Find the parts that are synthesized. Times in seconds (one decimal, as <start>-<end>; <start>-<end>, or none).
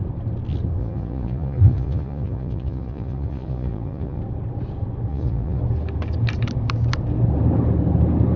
0.8-4.2; 5.1-5.6